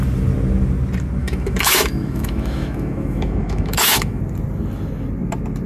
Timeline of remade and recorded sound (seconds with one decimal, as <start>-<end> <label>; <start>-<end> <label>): 0.0-1.2 recorded; 1.2-4.2 remade; 4.2-5.7 recorded